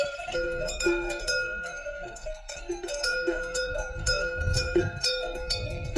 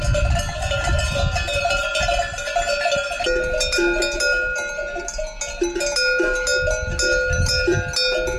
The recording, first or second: second